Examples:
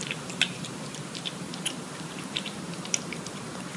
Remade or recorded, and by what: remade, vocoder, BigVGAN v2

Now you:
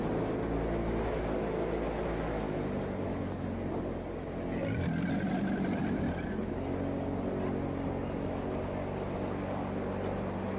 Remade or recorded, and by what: recorded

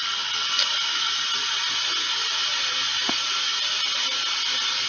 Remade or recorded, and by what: recorded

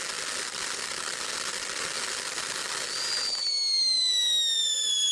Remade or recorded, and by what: recorded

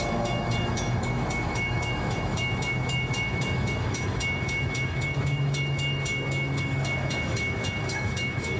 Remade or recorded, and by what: remade, autoencoder, DAC-VAE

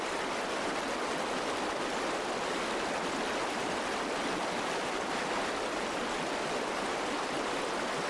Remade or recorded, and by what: recorded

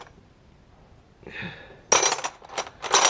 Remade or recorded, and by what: recorded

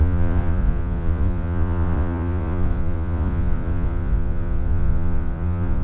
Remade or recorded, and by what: remade, vocoder, Vocos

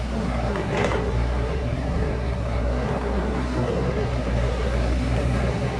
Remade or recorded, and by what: remade, codec, SNAC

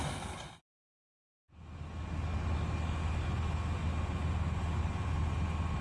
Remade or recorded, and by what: recorded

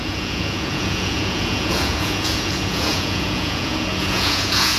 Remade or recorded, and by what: remade, vocoder, Vocos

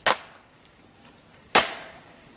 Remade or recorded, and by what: recorded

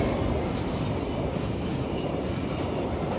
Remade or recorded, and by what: recorded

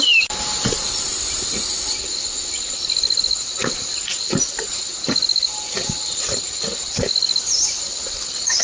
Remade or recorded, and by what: recorded